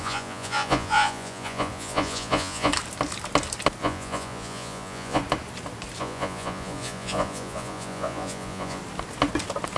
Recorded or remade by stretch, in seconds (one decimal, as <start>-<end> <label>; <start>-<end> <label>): 0.0-2.7 remade; 2.7-3.8 recorded; 3.8-5.2 remade; 5.2-6.0 recorded; 6.0-8.8 remade; 8.8-9.8 recorded